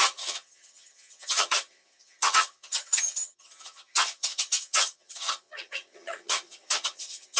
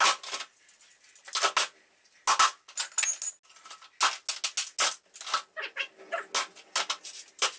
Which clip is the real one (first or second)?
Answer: second